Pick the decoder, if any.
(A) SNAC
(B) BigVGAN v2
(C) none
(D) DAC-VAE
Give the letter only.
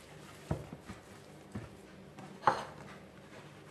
C